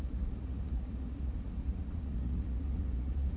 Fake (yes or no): yes